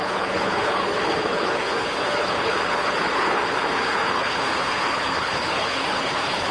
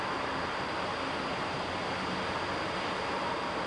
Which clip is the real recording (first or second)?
second